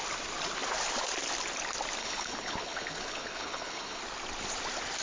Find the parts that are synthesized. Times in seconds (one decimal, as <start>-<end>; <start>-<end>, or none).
2.0-4.0